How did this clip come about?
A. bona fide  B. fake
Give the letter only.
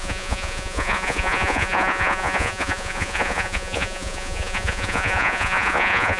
B